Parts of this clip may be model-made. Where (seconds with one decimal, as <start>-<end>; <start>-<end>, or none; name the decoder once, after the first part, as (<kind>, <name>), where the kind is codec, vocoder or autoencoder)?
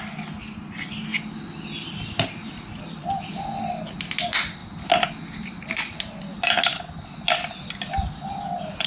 none